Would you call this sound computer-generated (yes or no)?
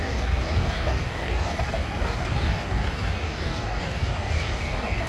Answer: yes